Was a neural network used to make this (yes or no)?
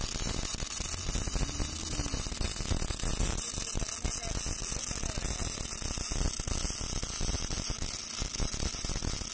no